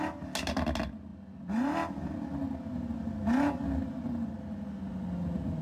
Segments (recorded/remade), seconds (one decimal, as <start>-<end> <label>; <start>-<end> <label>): 0.0-5.6 recorded